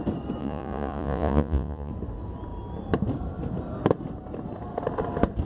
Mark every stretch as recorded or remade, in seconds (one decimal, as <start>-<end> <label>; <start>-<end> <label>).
0.0-0.4 recorded; 0.4-1.9 remade; 1.9-5.4 recorded